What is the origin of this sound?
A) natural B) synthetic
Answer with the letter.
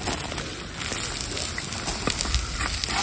A